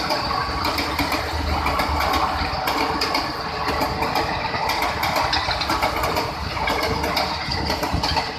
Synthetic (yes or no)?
no